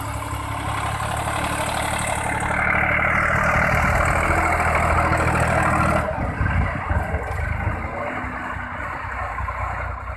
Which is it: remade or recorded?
recorded